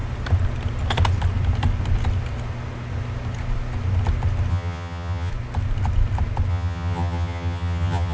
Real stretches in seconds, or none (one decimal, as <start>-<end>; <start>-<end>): 0.0-4.5; 5.3-6.5